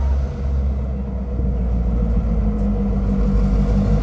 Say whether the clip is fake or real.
real